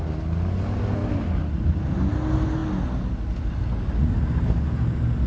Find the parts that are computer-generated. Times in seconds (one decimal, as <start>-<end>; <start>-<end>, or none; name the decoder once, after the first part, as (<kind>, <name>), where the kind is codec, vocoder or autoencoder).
none